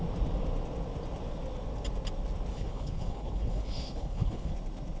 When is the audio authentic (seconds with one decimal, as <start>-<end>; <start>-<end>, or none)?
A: 0.0-2.5; 4.5-5.0

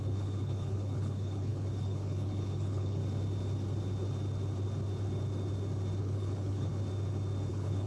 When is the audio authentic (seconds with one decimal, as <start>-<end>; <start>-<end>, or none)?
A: 3.0-6.0; 6.7-7.5

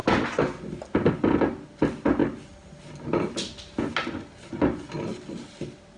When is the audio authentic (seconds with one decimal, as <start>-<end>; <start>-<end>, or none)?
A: 0.0-6.0